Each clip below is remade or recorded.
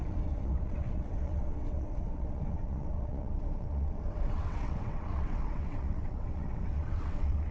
remade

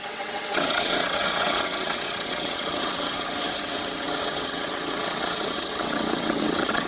remade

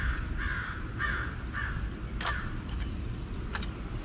recorded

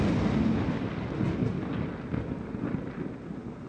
recorded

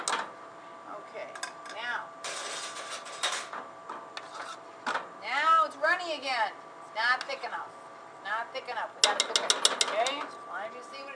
recorded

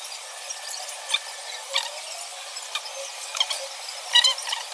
recorded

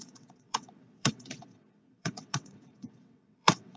remade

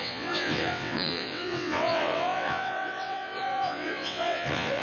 remade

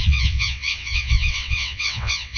remade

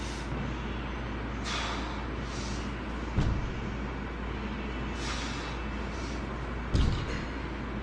recorded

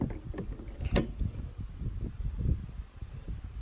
recorded